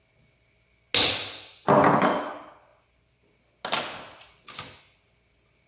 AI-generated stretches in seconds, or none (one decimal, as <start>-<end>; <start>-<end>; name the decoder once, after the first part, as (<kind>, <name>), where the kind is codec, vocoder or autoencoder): none